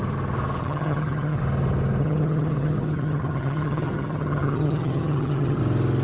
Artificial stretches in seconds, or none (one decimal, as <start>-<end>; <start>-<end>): 0.6-1.4; 2.0-5.6